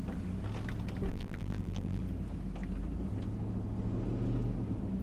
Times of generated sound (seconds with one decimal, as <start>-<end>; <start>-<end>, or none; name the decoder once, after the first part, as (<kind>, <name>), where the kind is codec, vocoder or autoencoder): 1.1-2.0 (vocoder, BigVGAN v2)